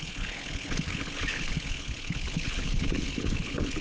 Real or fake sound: fake